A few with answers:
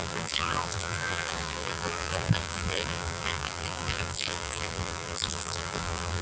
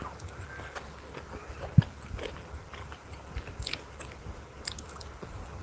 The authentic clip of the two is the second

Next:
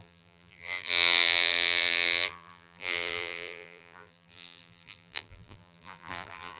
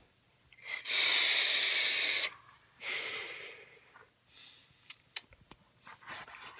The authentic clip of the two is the second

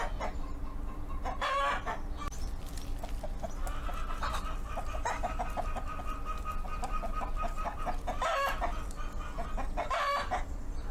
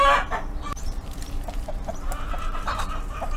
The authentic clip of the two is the first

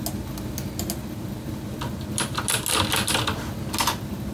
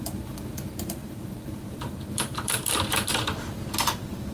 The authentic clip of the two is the first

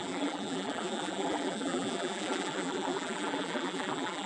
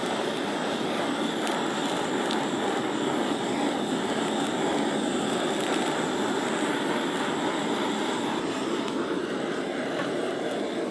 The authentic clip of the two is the second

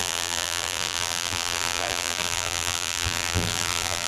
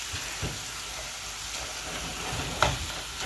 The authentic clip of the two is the second